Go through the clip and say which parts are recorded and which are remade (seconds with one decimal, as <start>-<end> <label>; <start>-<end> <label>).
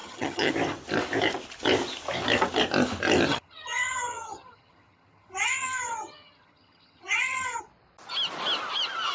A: 0.0-0.5 remade; 0.5-3.3 recorded; 3.3-7.6 remade; 7.6-9.1 recorded